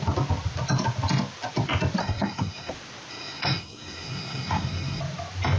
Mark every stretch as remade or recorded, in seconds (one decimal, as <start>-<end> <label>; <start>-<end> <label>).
0.0-2.0 recorded; 2.0-2.7 remade; 2.7-3.1 recorded; 3.1-5.0 remade; 5.0-5.6 recorded